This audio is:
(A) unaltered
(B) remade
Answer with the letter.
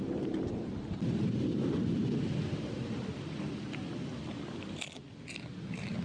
A